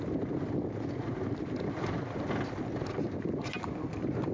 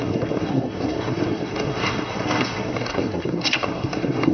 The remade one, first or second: second